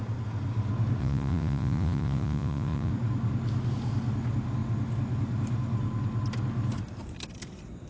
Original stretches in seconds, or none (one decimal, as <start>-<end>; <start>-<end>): 0.0-1.0; 2.9-7.9

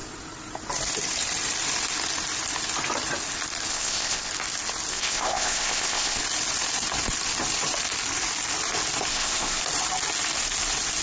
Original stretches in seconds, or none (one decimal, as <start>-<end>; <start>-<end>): 0.0-3.7; 4.3-4.9; 6.2-9.1; 9.6-11.0

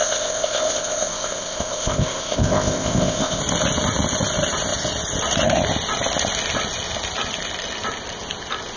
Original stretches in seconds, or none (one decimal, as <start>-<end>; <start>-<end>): 3.4-8.8

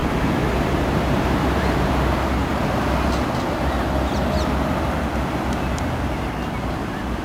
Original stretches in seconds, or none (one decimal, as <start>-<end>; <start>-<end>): 0.0-0.9; 2.4-6.7

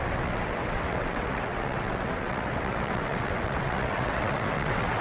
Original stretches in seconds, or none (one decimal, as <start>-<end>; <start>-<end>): none